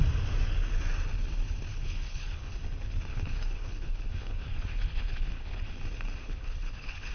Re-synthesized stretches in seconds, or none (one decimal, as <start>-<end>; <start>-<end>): 1.7-2.5; 3.1-5.7; 6.2-7.1